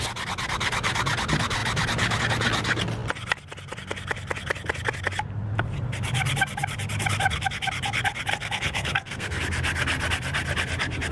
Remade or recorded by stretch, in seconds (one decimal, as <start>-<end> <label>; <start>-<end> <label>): 0.0-8.3 recorded; 8.3-9.4 remade; 9.4-11.1 recorded